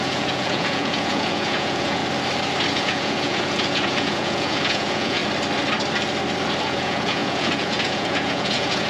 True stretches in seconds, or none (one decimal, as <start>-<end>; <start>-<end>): 2.0-2.7; 5.2-6.6